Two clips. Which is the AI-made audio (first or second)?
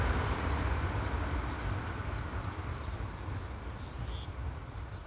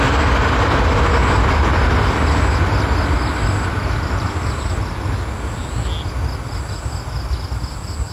first